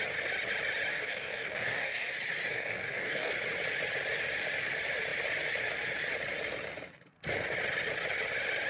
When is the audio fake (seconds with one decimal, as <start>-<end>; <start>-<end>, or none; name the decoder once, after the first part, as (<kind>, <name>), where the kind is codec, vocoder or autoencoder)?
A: 0.9-2.1 (codec, DAC); 2.5-3.3